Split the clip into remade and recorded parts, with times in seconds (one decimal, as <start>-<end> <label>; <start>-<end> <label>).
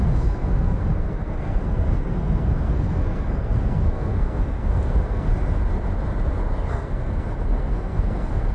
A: 0.0-5.3 remade; 5.3-6.7 recorded; 6.7-8.5 remade